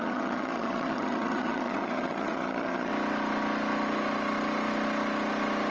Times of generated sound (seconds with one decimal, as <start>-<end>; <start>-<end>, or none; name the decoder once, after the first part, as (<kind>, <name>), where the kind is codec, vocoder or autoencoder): 0.0-2.9 (vocoder, HiFi-GAN)